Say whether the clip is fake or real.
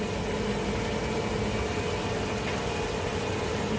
real